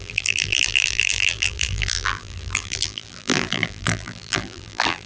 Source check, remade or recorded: remade